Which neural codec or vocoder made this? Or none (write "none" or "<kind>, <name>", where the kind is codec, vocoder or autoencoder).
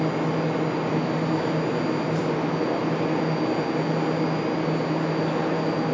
none